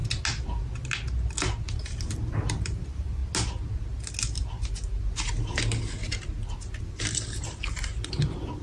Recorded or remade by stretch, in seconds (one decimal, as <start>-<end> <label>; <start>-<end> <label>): 0.0-1.8 recorded; 1.8-3.2 remade; 3.2-6.8 recorded; 6.8-8.6 remade

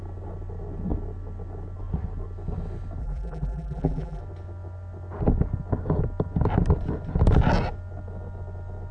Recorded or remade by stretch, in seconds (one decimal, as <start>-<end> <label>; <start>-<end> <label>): 0.0-3.0 recorded; 3.0-4.2 remade; 4.2-8.9 recorded

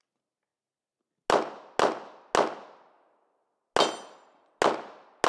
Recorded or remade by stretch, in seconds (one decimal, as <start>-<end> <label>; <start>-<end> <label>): 0.0-5.3 recorded

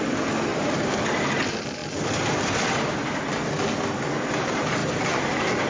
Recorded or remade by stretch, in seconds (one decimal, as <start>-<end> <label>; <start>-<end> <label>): 0.0-0.5 recorded; 0.5-1.0 remade; 1.0-4.8 recorded; 4.8-5.7 remade

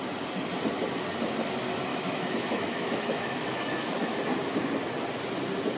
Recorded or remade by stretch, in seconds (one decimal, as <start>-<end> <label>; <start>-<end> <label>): 0.0-1.9 recorded; 1.9-4.2 remade; 4.2-5.8 recorded

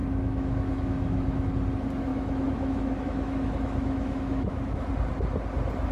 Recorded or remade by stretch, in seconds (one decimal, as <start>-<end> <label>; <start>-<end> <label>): 0.0-1.5 remade; 1.5-2.1 recorded; 2.1-4.9 remade; 4.9-5.9 recorded

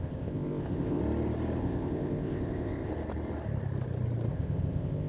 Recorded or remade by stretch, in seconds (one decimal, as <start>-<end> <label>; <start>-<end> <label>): 0.0-1.0 remade; 1.0-1.6 recorded; 1.6-2.9 remade; 2.9-4.3 recorded; 4.3-5.1 remade